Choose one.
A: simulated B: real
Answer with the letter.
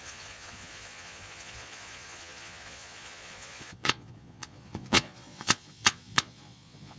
A